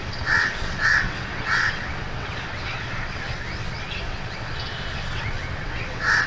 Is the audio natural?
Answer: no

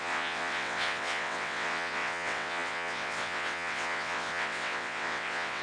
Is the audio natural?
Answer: no